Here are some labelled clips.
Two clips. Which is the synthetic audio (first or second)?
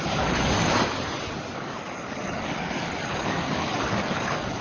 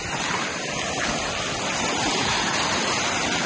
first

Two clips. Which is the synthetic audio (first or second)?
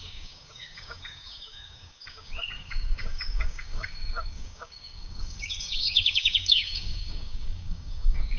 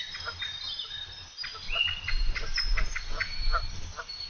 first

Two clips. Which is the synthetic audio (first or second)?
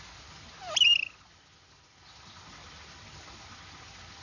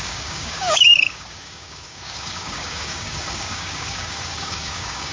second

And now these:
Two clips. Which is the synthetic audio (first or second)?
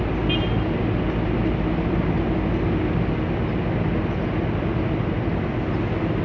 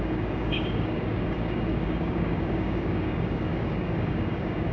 second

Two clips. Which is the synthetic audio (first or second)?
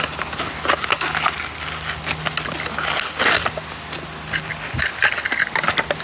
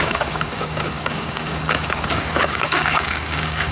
second